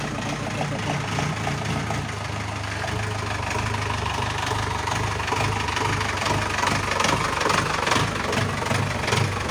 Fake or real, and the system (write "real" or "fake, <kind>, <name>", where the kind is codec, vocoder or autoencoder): real